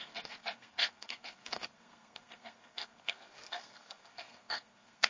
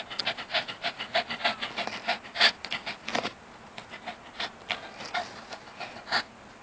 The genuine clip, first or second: second